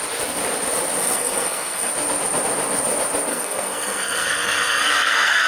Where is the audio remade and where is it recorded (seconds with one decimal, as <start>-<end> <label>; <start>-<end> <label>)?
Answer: 0.0-1.0 recorded; 1.0-1.9 remade; 1.9-3.3 recorded; 3.3-5.5 remade